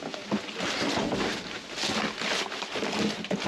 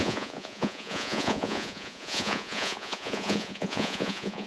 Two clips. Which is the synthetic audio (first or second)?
second